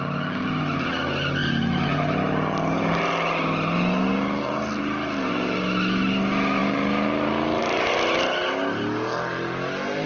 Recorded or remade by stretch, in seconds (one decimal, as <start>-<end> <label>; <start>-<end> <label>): 0.0-10.1 recorded